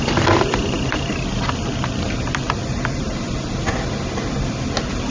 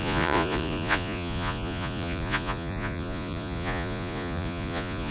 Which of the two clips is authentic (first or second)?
first